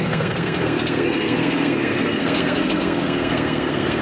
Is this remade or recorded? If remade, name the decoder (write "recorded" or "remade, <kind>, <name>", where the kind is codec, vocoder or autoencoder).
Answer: remade, codec, SNAC